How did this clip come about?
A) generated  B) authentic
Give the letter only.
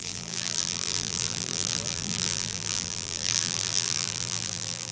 A